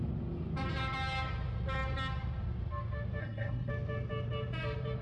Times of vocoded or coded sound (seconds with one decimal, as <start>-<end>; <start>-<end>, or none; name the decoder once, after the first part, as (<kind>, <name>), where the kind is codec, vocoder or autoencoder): 3.2-3.7 (codec, SNAC)